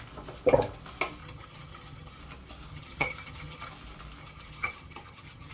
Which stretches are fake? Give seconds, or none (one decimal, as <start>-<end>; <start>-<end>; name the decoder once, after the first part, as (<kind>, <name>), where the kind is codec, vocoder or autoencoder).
1.2-2.2 (vocoder, HiFi-GAN); 2.7-3.7; 4.2-5.5